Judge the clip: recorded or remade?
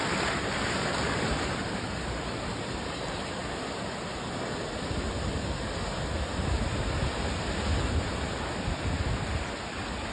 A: recorded